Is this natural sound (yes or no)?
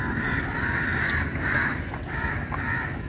yes